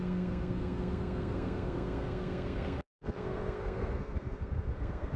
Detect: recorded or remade remade